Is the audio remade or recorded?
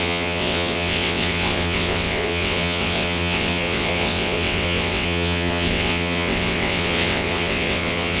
remade